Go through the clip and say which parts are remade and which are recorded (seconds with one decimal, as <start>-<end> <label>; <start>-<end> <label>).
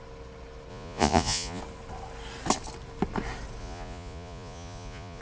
0.0-0.7 recorded; 0.7-1.6 remade; 1.6-3.6 recorded; 3.6-5.2 remade